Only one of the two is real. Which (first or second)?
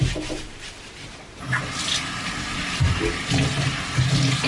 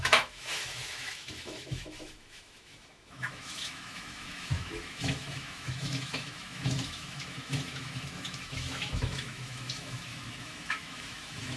first